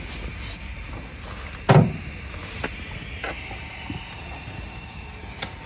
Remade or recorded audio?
recorded